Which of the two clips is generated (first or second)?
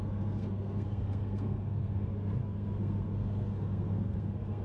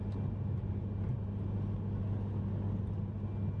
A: first